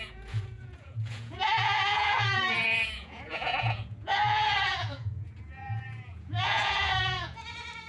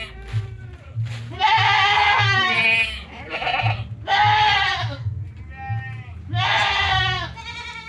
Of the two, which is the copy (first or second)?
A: first